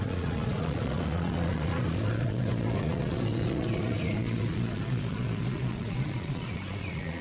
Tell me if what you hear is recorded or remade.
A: remade